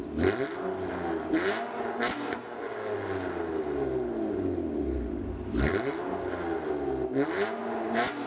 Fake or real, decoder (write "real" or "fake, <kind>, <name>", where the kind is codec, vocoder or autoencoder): real